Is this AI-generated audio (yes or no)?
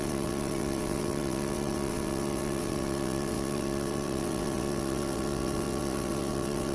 yes